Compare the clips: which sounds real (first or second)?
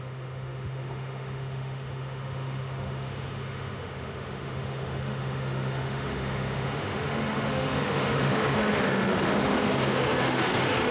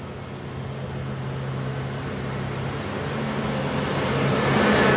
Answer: second